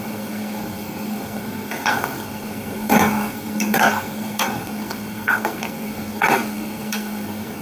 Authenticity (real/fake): fake